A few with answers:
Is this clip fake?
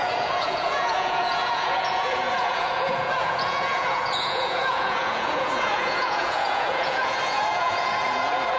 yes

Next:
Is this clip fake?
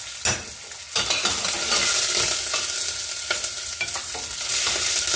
no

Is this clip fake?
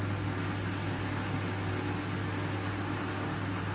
no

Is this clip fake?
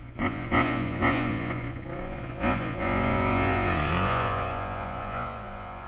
yes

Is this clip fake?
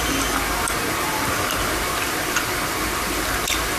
no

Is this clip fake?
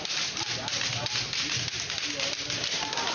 no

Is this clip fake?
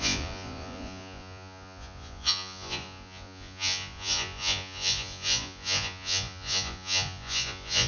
yes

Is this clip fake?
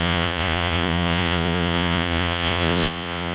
yes